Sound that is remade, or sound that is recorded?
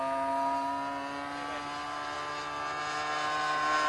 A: recorded